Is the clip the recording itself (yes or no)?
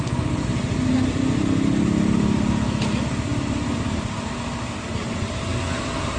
yes